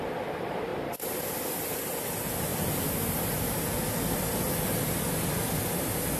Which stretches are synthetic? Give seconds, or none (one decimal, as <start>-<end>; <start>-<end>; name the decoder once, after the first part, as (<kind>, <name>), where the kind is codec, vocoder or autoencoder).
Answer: none